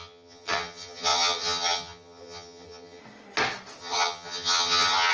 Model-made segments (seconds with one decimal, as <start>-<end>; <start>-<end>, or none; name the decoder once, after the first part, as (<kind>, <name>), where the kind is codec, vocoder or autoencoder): 0.0-3.0 (vocoder, HiFi-GAN); 3.8-5.1